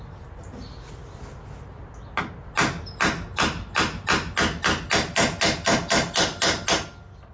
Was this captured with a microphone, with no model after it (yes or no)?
yes